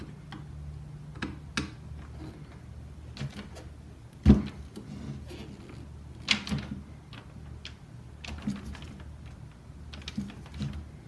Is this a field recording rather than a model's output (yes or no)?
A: yes